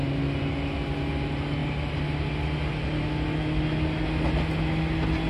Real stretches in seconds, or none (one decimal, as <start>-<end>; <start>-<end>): 0.0-5.3

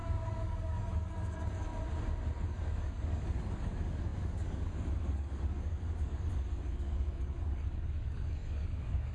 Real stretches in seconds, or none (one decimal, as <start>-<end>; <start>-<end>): 1.7-2.4

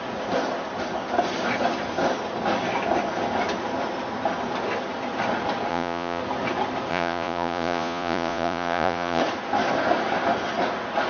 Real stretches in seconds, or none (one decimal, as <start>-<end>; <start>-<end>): 0.0-5.7; 6.2-6.9; 9.2-11.1

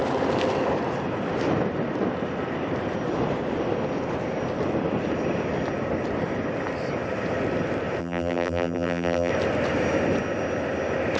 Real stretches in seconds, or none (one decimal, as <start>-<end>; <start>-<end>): 0.0-8.0; 9.3-11.2

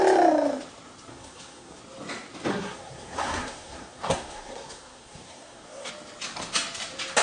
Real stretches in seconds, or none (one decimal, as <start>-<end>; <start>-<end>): 0.0-1.1; 1.8-2.5; 5.9-7.2

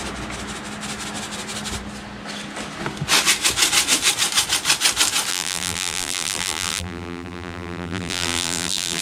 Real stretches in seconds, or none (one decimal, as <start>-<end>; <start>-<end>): 0.0-5.3

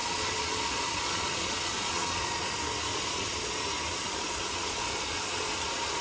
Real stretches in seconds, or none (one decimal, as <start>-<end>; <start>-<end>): 2.5-2.9; 3.5-3.9